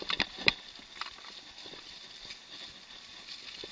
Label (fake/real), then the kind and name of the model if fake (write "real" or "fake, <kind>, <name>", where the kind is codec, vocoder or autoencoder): real